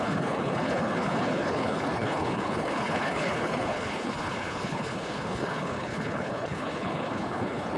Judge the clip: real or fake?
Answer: fake